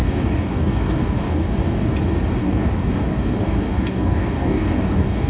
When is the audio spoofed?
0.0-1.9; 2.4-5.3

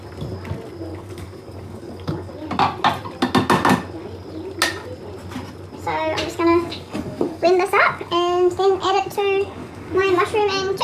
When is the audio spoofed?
0.9-2.3; 6.4-10.0

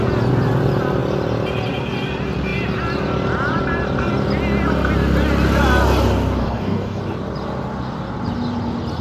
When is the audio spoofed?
6.4-7.0

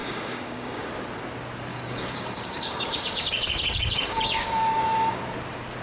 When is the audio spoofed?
0.0-0.9; 1.7-5.2